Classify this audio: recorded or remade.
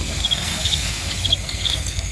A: remade